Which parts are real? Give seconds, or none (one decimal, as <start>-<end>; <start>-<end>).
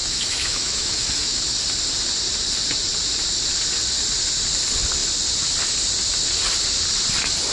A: 1.4-7.5